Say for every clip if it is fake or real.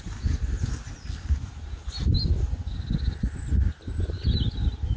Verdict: real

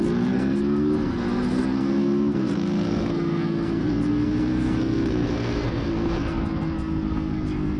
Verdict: fake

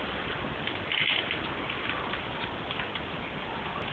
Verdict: real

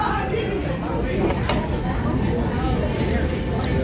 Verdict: real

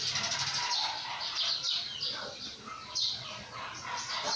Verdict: real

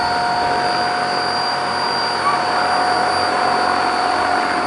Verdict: real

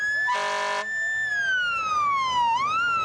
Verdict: real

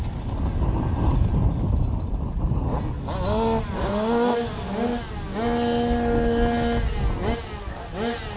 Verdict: real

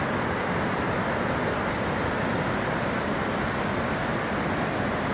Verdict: real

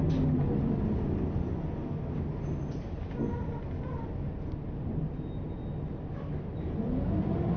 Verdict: real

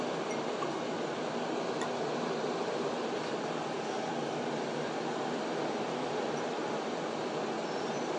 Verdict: real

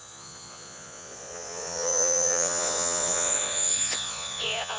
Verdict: fake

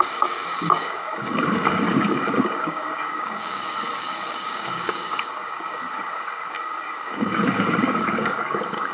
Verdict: fake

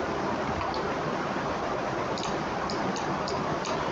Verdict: fake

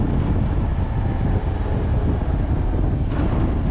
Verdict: real